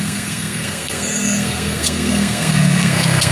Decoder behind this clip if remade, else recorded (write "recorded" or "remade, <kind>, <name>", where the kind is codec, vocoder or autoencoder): remade, codec, SNAC